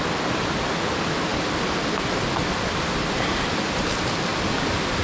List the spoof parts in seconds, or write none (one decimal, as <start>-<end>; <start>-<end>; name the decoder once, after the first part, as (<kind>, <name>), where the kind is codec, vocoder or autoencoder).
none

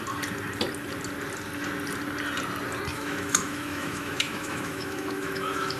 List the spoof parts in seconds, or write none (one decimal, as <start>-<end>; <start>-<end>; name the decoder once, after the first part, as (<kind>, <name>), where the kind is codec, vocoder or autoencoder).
2.9-5.8 (autoencoder, DAC-VAE)

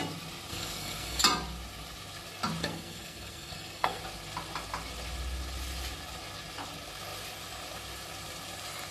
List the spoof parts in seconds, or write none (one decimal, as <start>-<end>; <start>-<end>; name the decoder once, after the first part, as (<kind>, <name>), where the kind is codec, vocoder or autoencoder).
0.5-1.2 (codec, SNAC); 2.6-4.0

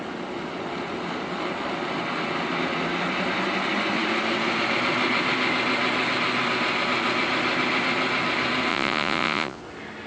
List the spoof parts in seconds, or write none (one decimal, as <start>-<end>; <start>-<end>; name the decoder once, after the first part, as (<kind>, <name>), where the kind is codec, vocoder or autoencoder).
8.7-9.6 (vocoder, Vocos)

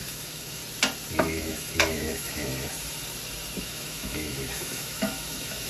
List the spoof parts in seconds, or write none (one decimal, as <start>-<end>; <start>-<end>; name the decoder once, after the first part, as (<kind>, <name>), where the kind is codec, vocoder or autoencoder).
0.0-0.6 (autoencoder, DAC-VAE); 1.1-2.5; 3.6-5.7

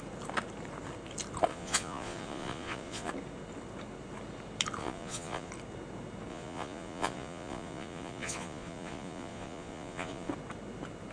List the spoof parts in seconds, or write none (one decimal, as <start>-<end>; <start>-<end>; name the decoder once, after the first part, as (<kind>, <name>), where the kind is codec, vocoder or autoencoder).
1.5-3.1 (vocoder, Vocos); 4.8-5.5; 6.3-10.3